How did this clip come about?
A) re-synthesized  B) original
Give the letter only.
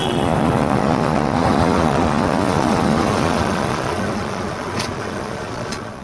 A